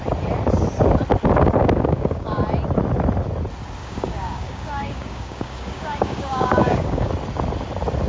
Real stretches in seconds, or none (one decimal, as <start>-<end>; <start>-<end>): 0.0-1.6; 2.4-3.8; 7.1-8.1

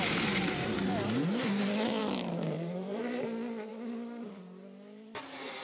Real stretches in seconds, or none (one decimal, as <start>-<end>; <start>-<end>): 0.0-3.7; 4.3-5.6

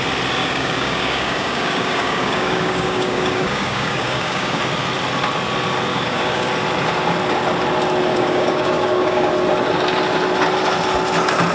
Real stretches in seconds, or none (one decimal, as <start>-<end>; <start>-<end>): 0.0-0.4; 4.6-5.9; 6.5-8.1; 9.3-11.5

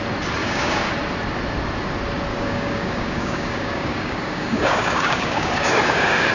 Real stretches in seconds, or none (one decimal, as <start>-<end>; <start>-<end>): 0.0-0.4; 0.9-2.3

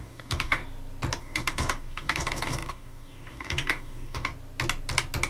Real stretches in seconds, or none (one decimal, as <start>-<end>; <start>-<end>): 0.6-1.2; 4.3-5.3

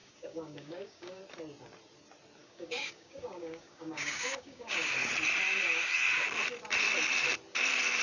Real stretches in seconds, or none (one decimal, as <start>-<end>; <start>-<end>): 1.2-2.4; 4.9-8.0

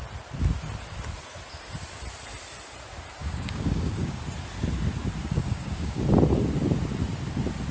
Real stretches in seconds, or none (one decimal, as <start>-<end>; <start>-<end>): 0.0-3.2; 4.2-5.2; 6.0-7.7